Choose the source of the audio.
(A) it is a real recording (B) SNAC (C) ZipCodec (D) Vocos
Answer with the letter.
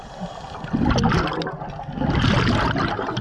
A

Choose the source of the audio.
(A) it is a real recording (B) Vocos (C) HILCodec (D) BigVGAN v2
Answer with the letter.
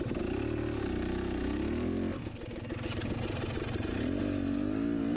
A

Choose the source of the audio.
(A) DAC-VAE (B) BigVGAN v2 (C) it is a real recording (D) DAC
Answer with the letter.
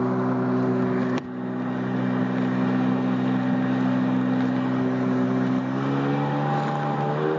C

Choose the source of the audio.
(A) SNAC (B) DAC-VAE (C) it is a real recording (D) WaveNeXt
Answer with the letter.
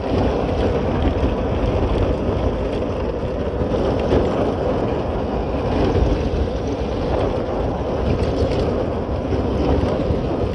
C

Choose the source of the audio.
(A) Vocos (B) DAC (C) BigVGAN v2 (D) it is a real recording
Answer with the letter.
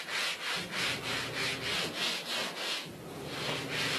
D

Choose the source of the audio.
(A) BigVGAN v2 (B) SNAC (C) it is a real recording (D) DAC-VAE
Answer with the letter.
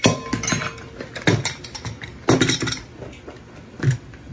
C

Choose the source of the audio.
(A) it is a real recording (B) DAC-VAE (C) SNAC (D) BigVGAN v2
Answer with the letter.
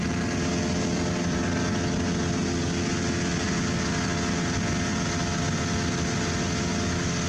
A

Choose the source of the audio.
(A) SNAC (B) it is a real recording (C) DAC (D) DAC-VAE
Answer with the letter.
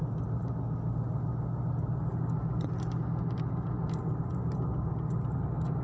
B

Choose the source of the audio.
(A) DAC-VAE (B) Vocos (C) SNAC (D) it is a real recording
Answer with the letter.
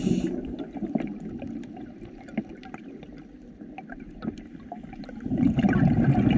D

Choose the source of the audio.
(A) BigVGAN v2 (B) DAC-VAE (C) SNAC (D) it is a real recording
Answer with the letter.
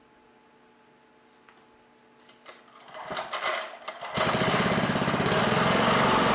D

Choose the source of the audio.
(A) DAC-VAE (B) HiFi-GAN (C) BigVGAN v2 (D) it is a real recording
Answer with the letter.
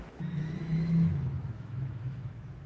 A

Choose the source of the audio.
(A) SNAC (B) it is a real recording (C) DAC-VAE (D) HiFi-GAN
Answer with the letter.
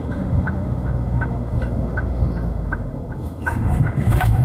C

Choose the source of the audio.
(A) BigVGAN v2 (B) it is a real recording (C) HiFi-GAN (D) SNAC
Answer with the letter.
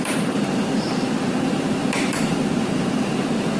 A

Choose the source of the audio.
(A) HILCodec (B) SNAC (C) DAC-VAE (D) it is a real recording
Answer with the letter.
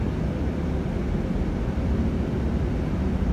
D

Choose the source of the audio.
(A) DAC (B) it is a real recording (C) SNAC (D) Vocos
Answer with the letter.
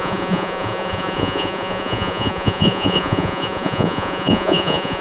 D